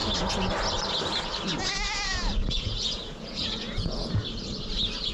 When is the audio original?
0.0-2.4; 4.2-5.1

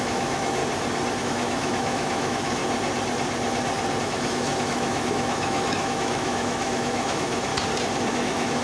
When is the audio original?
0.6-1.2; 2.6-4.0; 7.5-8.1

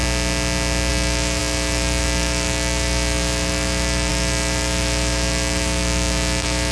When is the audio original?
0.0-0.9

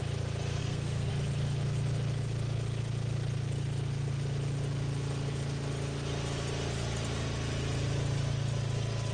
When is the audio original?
0.0-0.6; 1.1-9.1

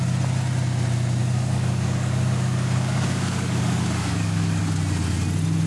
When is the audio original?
0.0-1.2; 4.6-5.7

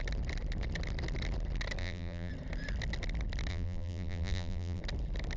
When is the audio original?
0.0-1.8; 2.3-3.5; 4.8-5.4

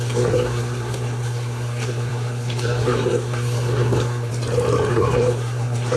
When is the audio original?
4.3-4.9

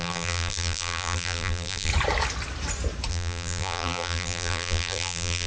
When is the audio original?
1.9-3.1